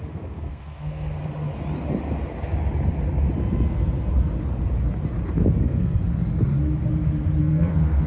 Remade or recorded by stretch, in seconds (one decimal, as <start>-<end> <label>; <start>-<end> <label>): 0.0-1.2 remade; 1.2-5.6 recorded; 5.6-6.0 remade; 6.0-7.4 recorded; 7.4-8.1 remade